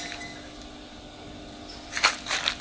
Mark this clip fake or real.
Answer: real